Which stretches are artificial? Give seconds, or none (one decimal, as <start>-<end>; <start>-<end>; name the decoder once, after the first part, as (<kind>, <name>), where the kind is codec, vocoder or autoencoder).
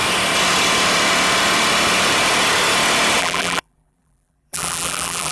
3.2-5.3 (vocoder, BigVGAN v2)